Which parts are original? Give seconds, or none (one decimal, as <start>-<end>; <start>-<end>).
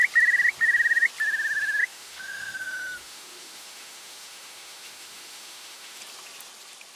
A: 0.0-1.8; 6.0-7.0